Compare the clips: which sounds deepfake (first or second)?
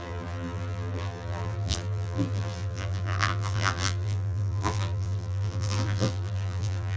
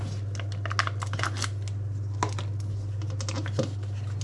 first